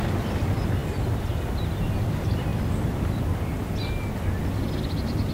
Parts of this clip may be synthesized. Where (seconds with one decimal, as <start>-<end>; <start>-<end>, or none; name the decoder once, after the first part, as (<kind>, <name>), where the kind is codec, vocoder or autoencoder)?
none